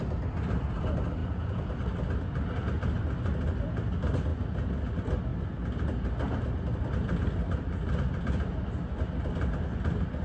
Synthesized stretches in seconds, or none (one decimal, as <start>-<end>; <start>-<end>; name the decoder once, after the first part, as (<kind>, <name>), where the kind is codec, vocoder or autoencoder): 1.2-1.7 (vocoder, Vocos)